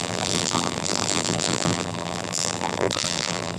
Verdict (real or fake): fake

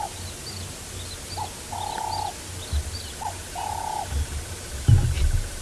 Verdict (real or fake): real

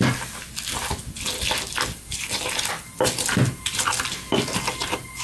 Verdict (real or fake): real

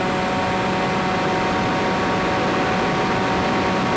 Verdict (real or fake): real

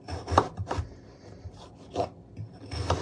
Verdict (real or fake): real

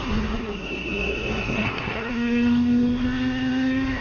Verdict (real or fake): fake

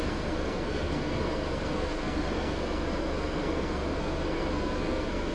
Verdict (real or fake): fake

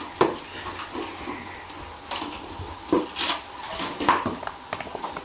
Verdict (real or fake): real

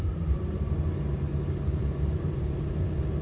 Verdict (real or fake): fake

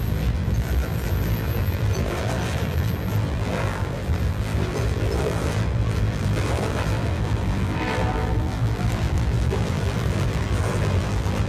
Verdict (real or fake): fake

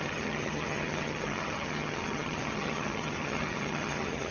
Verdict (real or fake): fake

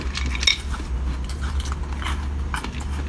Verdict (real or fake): real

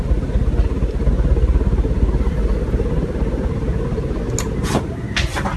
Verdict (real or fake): real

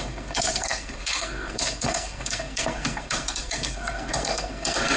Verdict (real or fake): fake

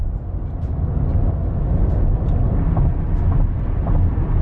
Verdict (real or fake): real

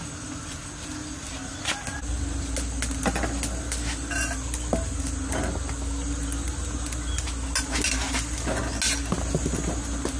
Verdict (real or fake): real